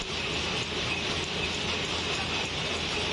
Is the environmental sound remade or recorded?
recorded